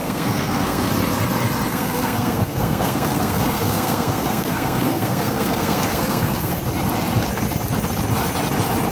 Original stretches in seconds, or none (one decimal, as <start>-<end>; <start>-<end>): 0.9-1.7; 6.6-8.9